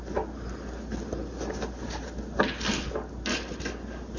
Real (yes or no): yes